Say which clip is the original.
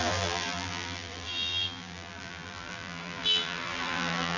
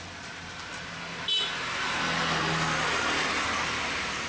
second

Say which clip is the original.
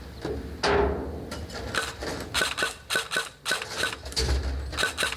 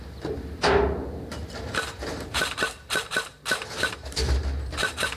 first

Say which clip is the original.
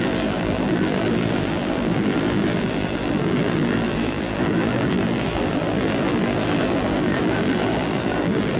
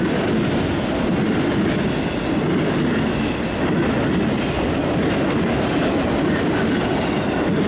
second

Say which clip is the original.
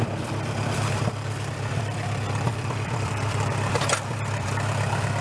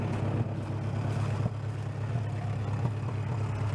second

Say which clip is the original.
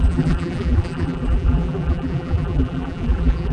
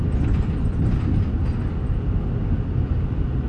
second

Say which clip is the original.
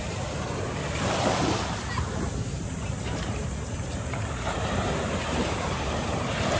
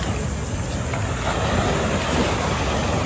second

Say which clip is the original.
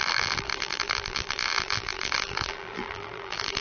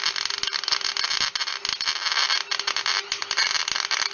second